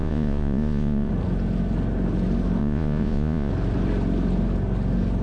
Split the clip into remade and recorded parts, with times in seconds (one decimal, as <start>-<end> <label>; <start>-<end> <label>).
0.0-1.1 remade; 1.1-2.6 recorded; 2.6-3.5 remade; 3.5-5.2 recorded